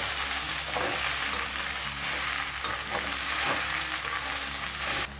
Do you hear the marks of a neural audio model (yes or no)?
no